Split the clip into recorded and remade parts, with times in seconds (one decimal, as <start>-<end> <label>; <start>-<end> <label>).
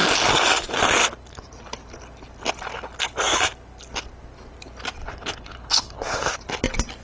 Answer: 0.0-5.0 recorded; 5.0-6.3 remade; 6.3-7.0 recorded